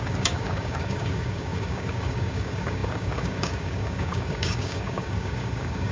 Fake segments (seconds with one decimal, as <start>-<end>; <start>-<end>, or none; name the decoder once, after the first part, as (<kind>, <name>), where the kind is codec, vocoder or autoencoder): 0.0-5.9 (codec, DAC)